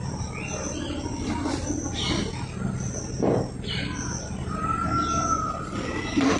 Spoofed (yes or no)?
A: no